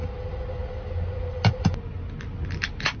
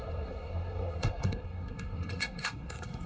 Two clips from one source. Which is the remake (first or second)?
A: second